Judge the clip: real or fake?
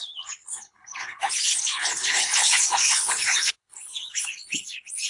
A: fake